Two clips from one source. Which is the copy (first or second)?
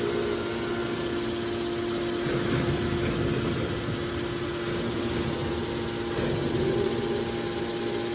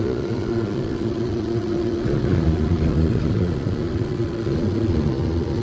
second